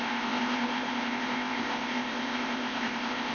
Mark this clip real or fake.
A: fake